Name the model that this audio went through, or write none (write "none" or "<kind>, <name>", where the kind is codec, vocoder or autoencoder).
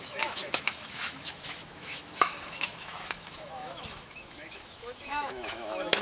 autoencoder, DAC-VAE